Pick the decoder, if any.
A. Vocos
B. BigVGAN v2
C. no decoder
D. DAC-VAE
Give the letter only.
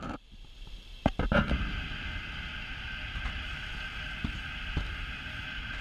C